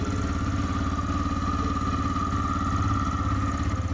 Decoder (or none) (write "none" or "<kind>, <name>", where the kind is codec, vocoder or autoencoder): none